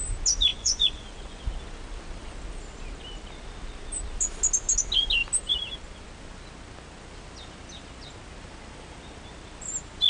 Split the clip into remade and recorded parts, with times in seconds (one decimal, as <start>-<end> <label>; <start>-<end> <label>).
0.0-0.5 recorded; 0.5-1.4 remade; 1.4-10.1 recorded